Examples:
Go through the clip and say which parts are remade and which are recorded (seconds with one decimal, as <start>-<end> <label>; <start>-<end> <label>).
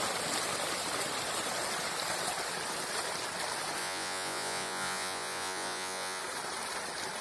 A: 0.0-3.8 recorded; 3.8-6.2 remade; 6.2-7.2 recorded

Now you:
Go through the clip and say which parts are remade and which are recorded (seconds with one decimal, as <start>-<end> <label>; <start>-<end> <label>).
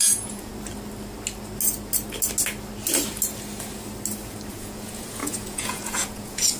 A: 0.0-0.5 remade; 0.5-4.5 recorded; 4.5-6.6 remade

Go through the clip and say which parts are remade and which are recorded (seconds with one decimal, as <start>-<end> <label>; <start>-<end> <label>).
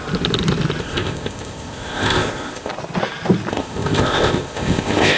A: 0.0-0.8 recorded; 0.8-2.7 remade; 2.7-3.5 recorded; 3.5-5.2 remade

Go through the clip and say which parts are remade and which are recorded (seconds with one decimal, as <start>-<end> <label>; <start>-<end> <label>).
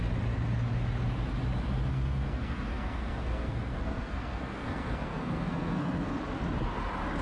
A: 0.0-1.9 recorded; 1.9-6.2 remade; 6.2-7.2 recorded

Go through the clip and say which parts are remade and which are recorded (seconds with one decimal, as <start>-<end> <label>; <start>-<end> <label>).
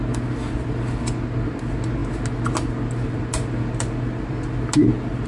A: 0.0-5.3 recorded